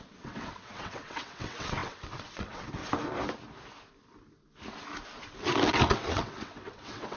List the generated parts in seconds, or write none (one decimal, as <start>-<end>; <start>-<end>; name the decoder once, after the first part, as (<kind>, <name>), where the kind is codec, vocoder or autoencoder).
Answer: 0.0-2.8 (vocoder, WaveNeXt); 5.7-7.2